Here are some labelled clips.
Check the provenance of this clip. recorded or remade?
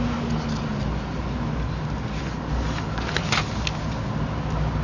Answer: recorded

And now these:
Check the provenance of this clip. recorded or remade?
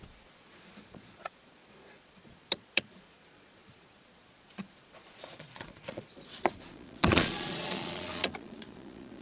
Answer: remade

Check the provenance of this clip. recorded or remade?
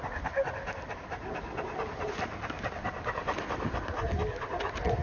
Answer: recorded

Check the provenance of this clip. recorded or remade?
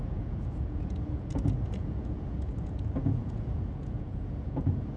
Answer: remade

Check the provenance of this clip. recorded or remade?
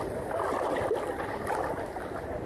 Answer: recorded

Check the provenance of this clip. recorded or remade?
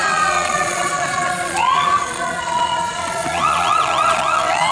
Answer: remade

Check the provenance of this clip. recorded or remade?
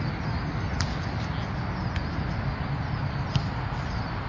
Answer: recorded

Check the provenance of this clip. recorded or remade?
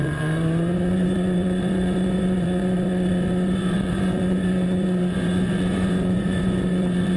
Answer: remade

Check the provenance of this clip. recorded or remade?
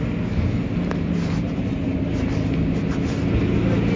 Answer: recorded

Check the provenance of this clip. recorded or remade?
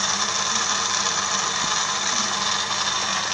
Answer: recorded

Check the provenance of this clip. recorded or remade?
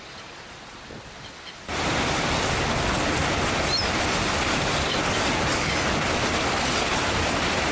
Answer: recorded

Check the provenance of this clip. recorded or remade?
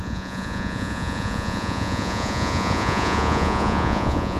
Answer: remade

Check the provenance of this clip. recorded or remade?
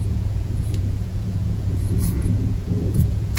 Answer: remade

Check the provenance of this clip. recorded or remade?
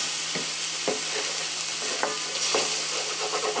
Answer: recorded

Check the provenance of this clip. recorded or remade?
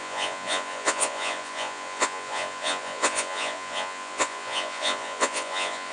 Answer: remade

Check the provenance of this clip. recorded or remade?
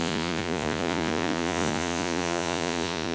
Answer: remade